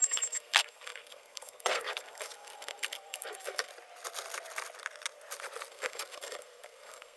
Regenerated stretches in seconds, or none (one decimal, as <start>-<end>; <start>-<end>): 0.0-3.7; 5.7-7.2

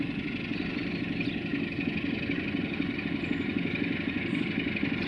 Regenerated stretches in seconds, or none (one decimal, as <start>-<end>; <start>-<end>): none